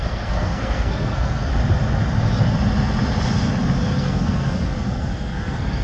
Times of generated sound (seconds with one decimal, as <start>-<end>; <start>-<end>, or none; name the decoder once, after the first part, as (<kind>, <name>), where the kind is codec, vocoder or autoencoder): 0.0-1.5 (codec, SNAC); 4.0-5.8

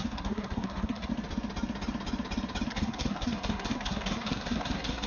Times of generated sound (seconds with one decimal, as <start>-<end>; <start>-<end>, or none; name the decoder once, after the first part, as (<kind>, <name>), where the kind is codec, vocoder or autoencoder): 0.0-1.1 (codec, SNAC); 2.7-5.1

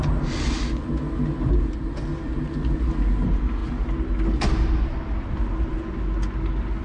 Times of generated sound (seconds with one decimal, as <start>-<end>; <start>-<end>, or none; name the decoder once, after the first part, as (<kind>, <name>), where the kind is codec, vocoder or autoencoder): none

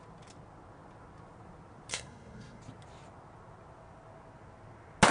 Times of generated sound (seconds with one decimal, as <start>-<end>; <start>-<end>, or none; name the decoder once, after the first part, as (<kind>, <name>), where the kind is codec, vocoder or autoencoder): 1.9-2.6 (codec, SNAC)